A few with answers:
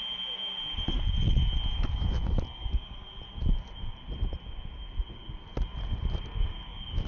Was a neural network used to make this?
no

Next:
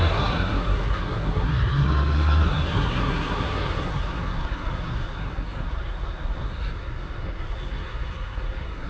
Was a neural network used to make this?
yes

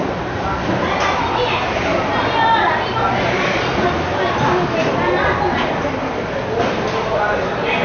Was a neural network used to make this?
no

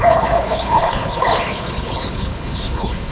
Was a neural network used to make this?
yes